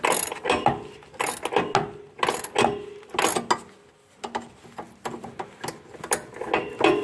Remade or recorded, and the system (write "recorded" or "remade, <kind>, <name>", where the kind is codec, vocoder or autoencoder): recorded